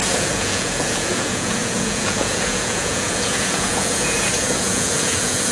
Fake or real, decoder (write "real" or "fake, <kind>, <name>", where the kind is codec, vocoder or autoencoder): fake, vocoder, Vocos